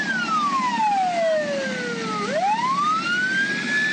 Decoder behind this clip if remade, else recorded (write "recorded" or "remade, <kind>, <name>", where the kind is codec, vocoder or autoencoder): recorded